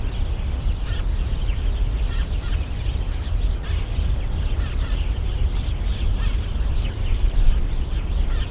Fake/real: real